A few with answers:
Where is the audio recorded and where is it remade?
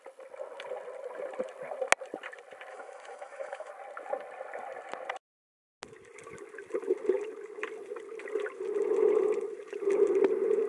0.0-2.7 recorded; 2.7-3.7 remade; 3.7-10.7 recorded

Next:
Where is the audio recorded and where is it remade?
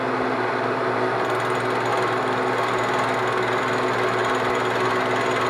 0.0-5.5 recorded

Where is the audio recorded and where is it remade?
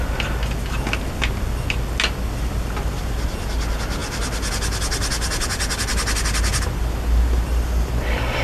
0.0-8.4 recorded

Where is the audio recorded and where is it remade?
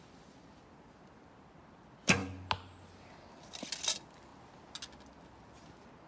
0.0-6.1 recorded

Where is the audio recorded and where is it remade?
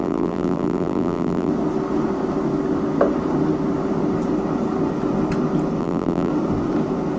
0.0-1.5 remade; 1.5-5.8 recorded; 5.8-6.3 remade; 6.3-7.2 recorded